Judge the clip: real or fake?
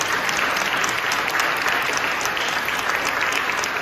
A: real